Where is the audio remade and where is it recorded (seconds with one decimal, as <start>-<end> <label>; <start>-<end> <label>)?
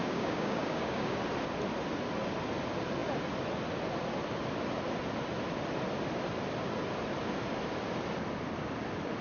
0.0-1.2 remade; 1.2-9.2 recorded